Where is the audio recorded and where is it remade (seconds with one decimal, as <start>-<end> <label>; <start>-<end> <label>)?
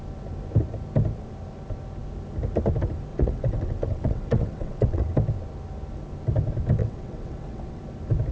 0.0-3.1 recorded; 3.1-5.1 remade; 5.1-6.8 recorded; 6.8-7.8 remade; 7.8-8.3 recorded